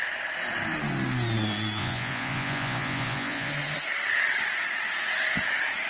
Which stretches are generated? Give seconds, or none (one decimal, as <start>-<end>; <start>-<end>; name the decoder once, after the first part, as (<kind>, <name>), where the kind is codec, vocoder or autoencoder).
1.8-3.5 (vocoder, Vocos)